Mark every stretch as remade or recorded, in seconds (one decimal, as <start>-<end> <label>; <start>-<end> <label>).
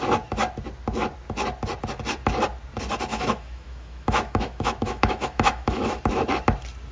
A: 0.0-3.1 recorded; 3.1-6.0 remade; 6.0-6.9 recorded